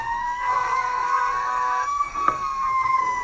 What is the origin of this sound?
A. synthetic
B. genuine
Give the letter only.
A